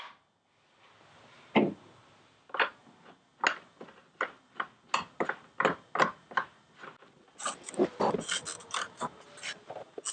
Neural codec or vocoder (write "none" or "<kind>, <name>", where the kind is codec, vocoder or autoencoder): none